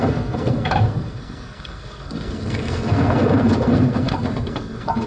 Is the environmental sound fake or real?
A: fake